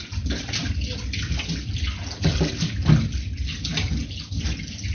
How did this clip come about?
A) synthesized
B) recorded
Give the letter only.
B